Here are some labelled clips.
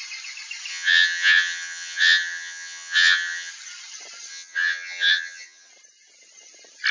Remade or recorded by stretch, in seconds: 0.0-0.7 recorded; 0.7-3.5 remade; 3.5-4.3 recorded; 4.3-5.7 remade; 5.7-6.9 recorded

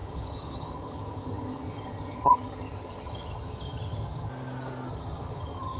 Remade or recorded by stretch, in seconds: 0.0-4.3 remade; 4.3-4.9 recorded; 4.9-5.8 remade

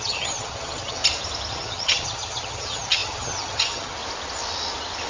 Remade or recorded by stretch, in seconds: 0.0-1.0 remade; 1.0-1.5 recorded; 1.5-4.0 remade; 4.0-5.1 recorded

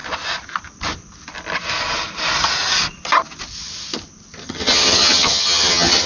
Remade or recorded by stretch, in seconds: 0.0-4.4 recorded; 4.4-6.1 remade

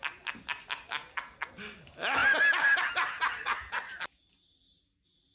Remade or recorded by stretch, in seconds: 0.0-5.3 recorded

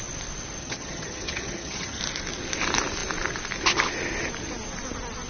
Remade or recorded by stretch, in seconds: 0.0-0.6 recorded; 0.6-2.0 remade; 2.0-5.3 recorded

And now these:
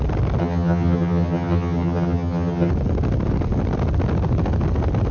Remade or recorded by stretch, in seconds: 0.0-0.4 recorded; 0.4-2.7 remade; 2.7-5.1 recorded

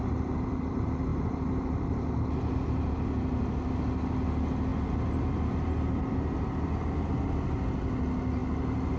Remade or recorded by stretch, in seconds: 0.0-9.0 recorded